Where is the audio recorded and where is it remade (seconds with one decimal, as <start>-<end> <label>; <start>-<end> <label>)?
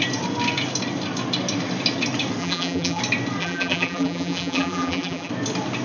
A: 0.0-2.4 recorded; 2.4-3.0 remade; 3.0-3.4 recorded; 3.4-5.3 remade; 5.3-5.8 recorded